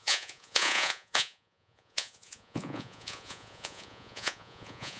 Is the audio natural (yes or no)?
no